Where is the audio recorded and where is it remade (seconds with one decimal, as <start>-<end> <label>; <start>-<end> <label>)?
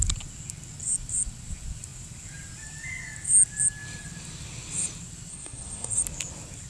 0.0-5.3 recorded; 5.3-6.0 remade; 6.0-6.7 recorded